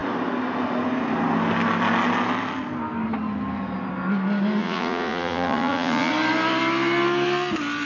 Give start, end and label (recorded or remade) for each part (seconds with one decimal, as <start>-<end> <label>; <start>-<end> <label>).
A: 0.0-4.6 recorded; 4.6-6.1 remade; 6.1-7.9 recorded